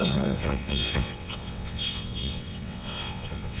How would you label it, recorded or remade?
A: remade